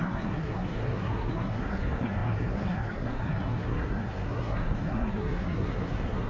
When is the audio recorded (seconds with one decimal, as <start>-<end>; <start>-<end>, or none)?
none